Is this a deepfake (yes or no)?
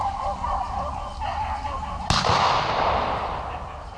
no